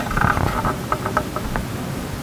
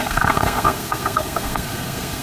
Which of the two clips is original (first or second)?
first